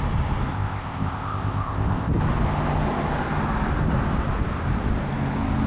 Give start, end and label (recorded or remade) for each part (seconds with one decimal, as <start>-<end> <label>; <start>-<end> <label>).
0.0-0.5 recorded; 0.5-2.1 remade; 2.1-5.7 recorded